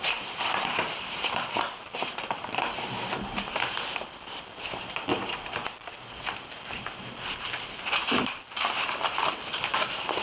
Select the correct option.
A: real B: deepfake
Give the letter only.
B